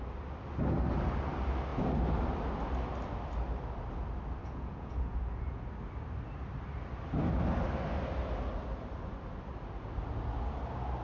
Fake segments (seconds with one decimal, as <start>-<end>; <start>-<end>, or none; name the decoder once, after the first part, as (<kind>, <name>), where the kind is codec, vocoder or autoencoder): 4.4-5.6 (vocoder, Vocos)